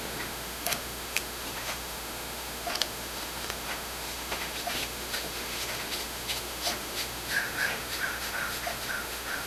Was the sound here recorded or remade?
remade